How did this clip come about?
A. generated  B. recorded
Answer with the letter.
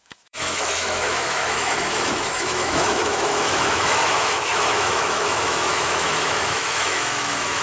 A